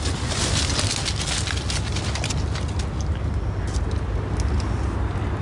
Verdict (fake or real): real